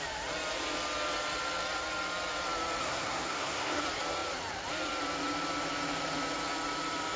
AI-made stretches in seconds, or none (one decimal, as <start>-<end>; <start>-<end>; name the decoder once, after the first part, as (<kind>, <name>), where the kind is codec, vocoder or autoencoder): 2.8-3.8 (codec, SNAC)